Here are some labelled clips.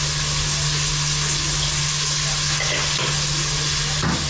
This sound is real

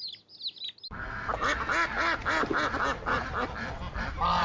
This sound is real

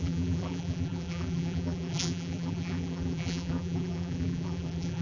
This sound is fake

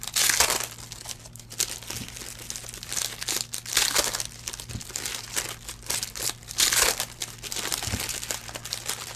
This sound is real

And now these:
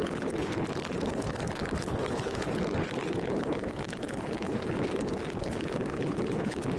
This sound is fake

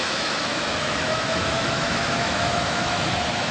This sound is fake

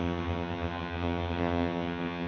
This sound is fake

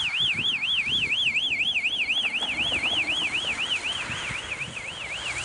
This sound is real